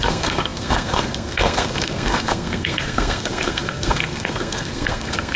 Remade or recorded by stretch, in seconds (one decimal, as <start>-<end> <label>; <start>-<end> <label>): 0.0-5.4 remade